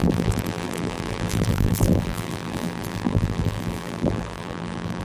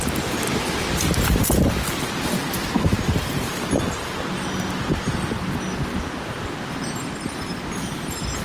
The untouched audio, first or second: second